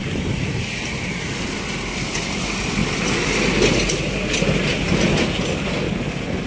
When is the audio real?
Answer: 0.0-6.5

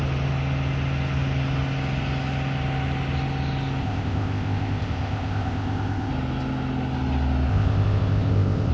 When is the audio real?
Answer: 0.0-3.8; 6.1-7.5